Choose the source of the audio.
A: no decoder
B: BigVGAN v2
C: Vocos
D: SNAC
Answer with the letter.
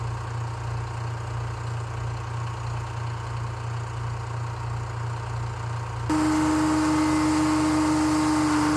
A